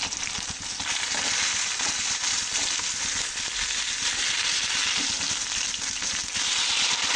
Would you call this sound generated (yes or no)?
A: no